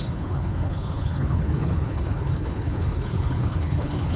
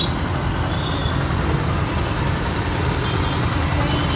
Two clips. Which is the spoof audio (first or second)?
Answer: first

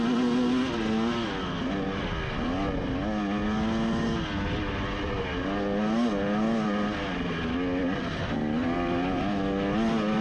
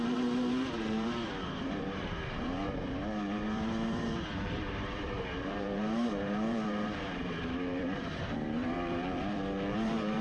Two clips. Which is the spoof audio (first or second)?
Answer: second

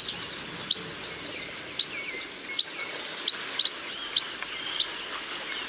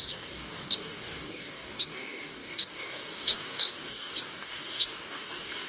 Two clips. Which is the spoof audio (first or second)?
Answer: second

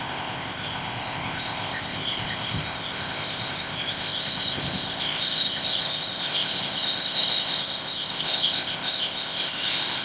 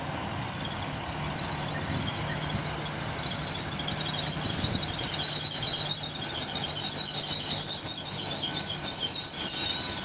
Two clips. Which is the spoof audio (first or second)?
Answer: first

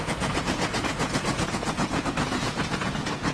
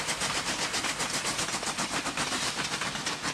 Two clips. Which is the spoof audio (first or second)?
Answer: first